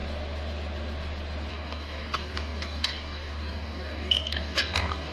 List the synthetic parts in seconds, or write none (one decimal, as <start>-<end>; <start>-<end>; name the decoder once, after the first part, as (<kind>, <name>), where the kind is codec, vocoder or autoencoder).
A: 1.5-5.1 (codec, DAC)